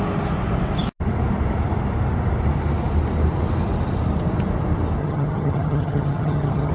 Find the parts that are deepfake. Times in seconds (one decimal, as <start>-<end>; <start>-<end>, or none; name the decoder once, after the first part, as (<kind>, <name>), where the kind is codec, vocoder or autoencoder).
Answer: 5.0-6.7 (vocoder, HiFi-GAN)